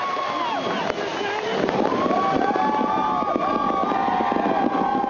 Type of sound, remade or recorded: recorded